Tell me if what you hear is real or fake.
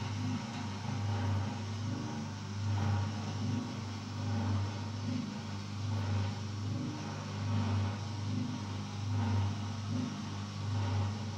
real